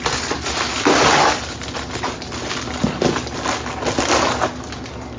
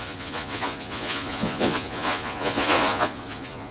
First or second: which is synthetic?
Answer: second